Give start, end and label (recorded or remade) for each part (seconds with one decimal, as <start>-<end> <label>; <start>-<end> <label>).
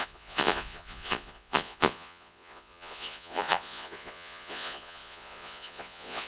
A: 0.0-6.3 remade